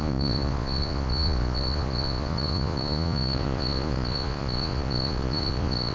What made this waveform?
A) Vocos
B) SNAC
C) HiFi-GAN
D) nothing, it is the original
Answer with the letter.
A